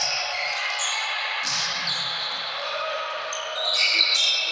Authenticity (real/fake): real